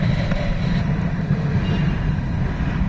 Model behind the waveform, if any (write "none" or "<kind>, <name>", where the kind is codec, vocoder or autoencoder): none